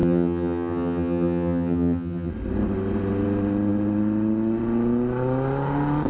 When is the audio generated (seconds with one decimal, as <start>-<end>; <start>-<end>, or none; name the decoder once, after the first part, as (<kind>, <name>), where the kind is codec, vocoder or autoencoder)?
0.0-2.3 (vocoder, HiFi-GAN)